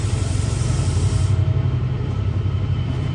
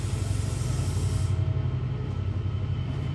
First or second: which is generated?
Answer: first